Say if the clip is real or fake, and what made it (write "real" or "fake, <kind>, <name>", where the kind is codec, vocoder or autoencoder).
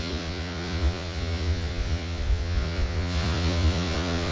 fake, vocoder, Vocos